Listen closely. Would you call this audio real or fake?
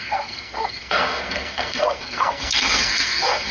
fake